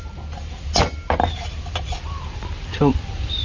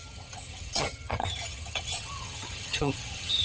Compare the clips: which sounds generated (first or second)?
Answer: second